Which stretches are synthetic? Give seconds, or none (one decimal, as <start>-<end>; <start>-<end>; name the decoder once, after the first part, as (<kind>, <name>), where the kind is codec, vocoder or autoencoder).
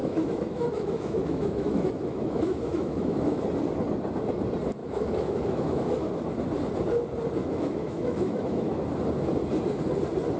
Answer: 0.0-3.4 (autoencoder, DAC-VAE); 4.8-6.1; 7.4-8.8